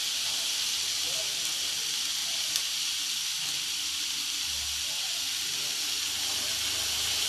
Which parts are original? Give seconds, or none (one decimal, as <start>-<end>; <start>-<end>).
0.0-7.3